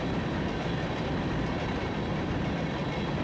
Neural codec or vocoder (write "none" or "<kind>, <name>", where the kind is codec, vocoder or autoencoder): none